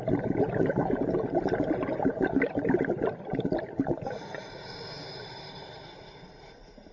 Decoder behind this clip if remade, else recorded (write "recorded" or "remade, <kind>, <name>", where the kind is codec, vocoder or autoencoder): recorded